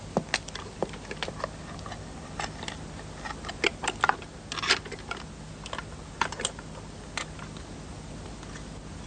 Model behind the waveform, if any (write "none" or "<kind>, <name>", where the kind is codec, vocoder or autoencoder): none